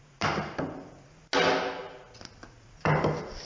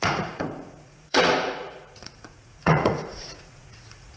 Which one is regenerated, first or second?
second